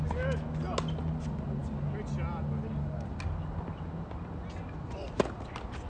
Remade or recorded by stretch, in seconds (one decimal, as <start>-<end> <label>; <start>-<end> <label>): 0.0-5.9 recorded

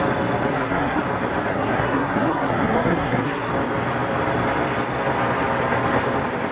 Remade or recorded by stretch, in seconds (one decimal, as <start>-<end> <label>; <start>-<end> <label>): 0.0-0.5 recorded; 0.5-1.0 remade; 1.0-1.5 recorded; 1.5-3.5 remade; 3.5-6.5 recorded

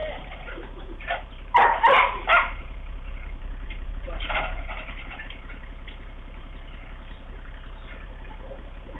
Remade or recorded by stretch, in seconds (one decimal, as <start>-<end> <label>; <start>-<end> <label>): 0.0-9.0 remade

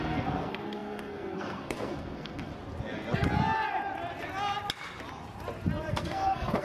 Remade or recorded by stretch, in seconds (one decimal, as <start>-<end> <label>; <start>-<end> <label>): 0.0-2.5 remade; 2.5-5.9 recorded; 5.9-6.6 remade

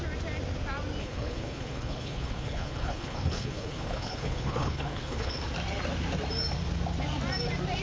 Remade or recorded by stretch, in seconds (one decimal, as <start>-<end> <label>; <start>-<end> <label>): 0.0-1.0 recorded; 1.0-5.4 remade; 5.4-7.8 recorded

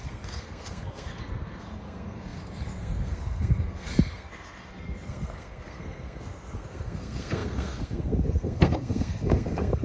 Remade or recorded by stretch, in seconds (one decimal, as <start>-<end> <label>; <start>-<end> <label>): 0.0-9.8 remade